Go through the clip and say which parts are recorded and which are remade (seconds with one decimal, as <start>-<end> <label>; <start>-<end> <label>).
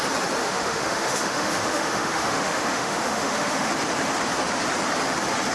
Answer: 0.0-0.4 recorded; 0.4-3.7 remade; 3.7-5.5 recorded